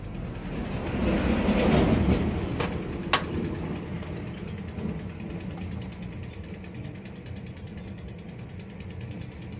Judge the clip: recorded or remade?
recorded